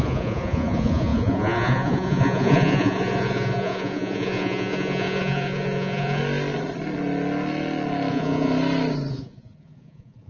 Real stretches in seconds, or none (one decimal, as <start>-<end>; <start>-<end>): 6.2-8.1; 8.5-9.1